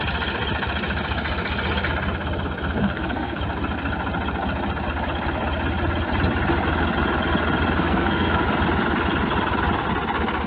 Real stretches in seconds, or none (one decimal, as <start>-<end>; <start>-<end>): 0.0-2.8; 3.4-7.8; 8.4-10.5